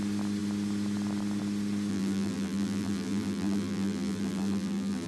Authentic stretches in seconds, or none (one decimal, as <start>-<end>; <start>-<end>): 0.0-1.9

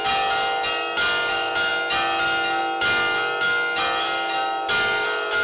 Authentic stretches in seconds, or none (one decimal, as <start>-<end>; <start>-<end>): 0.0-5.4

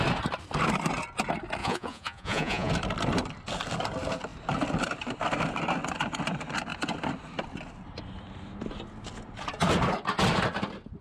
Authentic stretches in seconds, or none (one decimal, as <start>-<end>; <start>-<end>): 0.0-1.6; 2.7-11.0

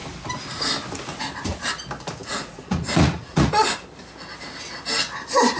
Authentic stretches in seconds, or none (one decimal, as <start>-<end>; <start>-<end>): 0.0-2.2; 3.5-5.6

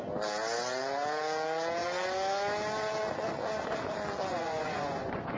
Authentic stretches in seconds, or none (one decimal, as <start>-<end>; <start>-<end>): 0.0-4.3